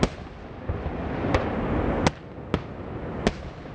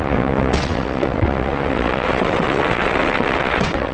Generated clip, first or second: second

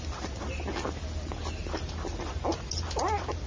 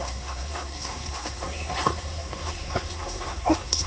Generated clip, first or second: second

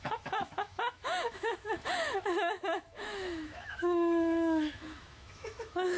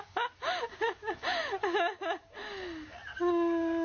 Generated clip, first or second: first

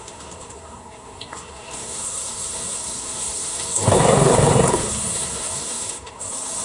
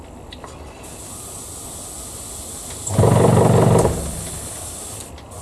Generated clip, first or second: first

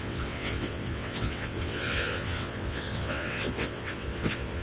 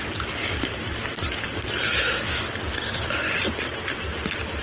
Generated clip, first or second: first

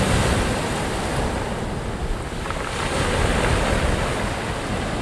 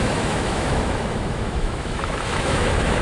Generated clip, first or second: second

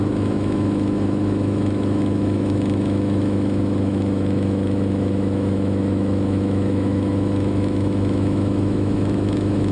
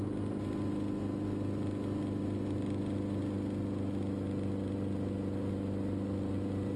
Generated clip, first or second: first